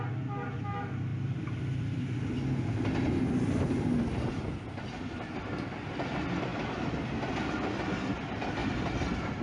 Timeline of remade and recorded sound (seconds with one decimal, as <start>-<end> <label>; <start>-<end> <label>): 0.0-9.4 recorded